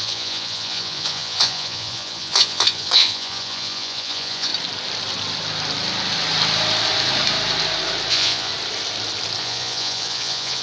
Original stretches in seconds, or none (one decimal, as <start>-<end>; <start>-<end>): 4.5-8.1; 8.5-9.4